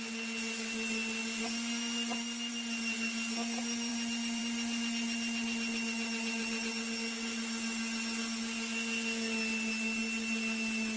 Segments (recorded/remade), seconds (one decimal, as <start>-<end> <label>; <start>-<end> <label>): 0.0-11.0 recorded